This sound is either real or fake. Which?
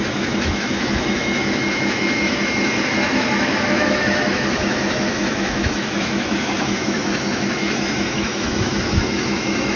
fake